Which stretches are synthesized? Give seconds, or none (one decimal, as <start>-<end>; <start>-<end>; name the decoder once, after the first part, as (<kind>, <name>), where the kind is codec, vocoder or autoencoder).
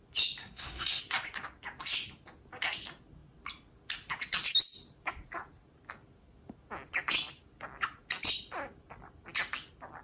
0.4-1.0 (codec, SNAC)